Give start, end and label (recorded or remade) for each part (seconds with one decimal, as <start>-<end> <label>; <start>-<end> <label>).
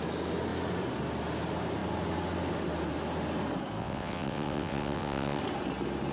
0.0-3.8 recorded; 3.8-5.4 remade; 5.4-6.1 recorded